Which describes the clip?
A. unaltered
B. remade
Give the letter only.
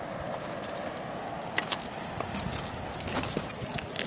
A